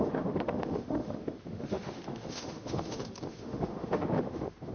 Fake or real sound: fake